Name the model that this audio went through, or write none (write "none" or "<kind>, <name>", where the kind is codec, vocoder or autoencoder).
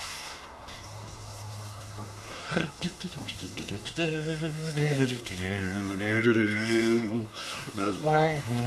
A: codec, SNAC